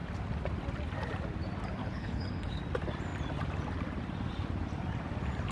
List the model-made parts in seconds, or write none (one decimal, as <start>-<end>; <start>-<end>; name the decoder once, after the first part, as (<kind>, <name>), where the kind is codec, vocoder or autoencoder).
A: 1.8-2.6 (codec, HILCodec)